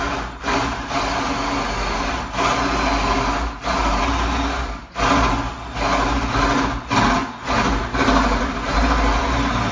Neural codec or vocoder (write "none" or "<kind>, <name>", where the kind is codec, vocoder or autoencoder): none